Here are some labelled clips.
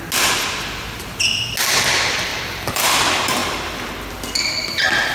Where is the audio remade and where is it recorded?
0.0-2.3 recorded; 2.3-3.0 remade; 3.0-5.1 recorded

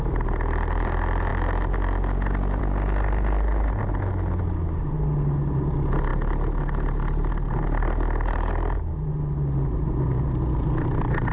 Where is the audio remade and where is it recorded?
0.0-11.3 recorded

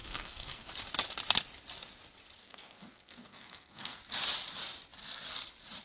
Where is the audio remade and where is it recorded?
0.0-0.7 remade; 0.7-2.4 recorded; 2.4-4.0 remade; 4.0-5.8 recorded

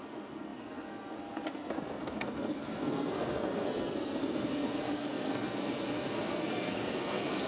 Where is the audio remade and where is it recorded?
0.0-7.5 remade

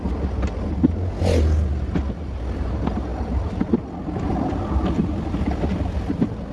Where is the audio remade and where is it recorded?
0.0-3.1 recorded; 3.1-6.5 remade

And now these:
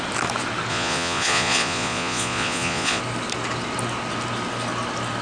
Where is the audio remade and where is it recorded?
0.0-0.7 recorded; 0.7-3.0 remade; 3.0-5.2 recorded

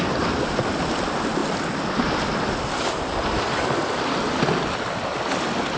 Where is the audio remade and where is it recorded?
0.0-5.8 recorded